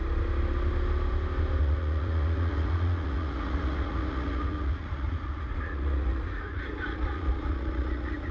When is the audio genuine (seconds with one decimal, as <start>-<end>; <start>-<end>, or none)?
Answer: 0.0-1.6